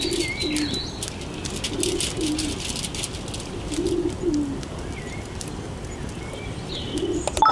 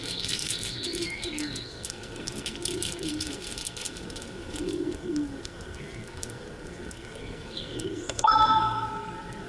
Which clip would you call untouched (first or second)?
first